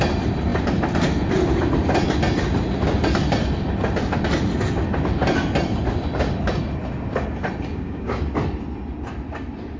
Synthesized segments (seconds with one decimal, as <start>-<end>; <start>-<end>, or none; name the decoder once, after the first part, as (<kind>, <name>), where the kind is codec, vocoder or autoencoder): 7.7-8.3 (codec, DAC)